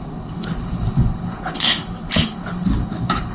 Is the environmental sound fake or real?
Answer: fake